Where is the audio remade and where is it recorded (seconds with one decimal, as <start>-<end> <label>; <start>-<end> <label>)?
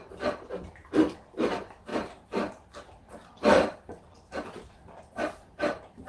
0.0-6.1 recorded